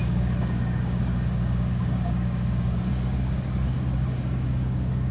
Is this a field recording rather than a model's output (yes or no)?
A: no